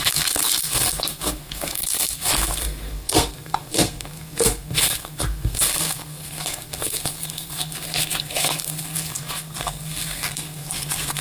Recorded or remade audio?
remade